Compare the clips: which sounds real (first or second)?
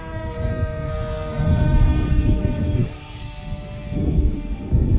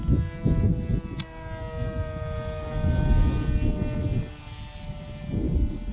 second